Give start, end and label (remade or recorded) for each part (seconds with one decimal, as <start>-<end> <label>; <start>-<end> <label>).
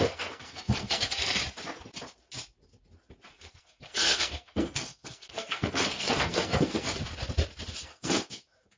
0.0-1.4 remade; 1.4-3.3 recorded; 3.3-7.0 remade; 7.0-7.8 recorded; 7.8-8.8 remade